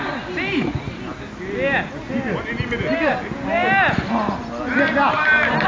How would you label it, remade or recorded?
recorded